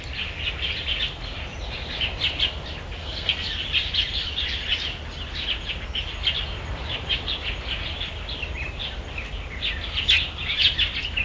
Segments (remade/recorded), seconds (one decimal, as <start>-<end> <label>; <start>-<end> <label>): 0.0-3.0 recorded; 3.0-3.5 remade; 3.5-11.2 recorded